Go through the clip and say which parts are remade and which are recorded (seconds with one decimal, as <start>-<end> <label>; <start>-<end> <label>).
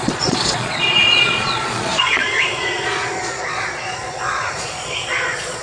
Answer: 0.0-5.6 remade